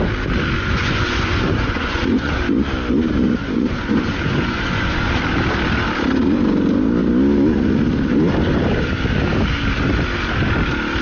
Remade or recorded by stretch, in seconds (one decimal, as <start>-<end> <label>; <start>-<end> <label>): 0.0-0.7 recorded; 0.7-2.4 remade; 2.4-3.4 recorded; 3.4-5.1 remade; 5.1-11.0 recorded

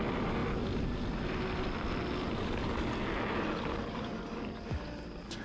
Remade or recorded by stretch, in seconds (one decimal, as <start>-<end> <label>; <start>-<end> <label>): 0.0-5.4 recorded

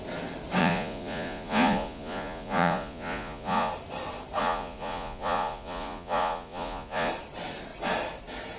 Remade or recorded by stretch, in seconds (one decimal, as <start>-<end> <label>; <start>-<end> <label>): 0.0-0.6 recorded; 0.6-3.7 remade; 3.7-4.4 recorded; 4.4-7.1 remade; 7.1-8.6 recorded

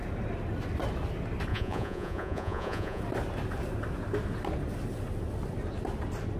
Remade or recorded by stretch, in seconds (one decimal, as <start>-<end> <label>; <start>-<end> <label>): 0.0-1.5 recorded; 1.5-3.0 remade; 3.0-6.4 recorded

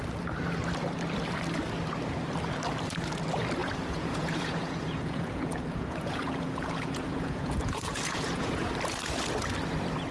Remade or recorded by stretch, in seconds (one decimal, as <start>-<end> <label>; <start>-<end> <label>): 0.0-3.6 recorded; 3.6-8.7 remade; 8.7-10.1 recorded

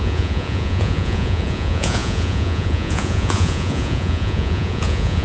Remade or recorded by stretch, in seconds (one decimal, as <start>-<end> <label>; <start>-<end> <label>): 0.0-5.2 remade

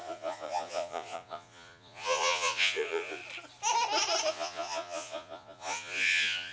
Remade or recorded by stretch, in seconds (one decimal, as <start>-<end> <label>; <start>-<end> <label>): 0.0-3.2 remade; 3.2-4.3 recorded; 4.3-6.5 remade